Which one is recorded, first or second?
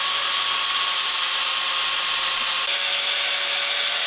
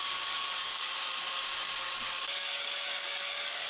first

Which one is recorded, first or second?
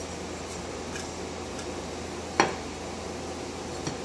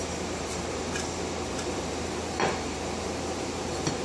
first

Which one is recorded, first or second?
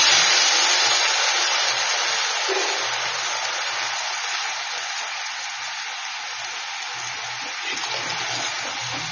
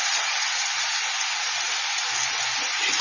first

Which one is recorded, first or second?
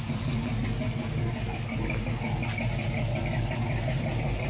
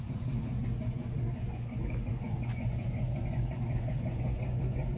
first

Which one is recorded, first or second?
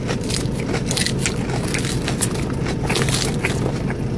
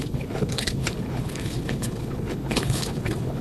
first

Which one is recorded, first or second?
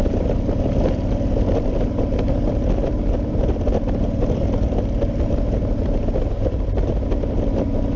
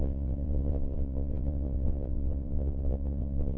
first